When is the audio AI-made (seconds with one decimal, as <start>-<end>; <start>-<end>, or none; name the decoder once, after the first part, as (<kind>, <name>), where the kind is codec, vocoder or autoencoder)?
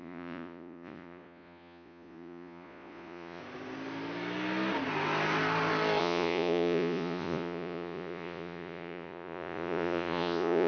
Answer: 0.0-3.4 (vocoder, Vocos); 6.0-10.7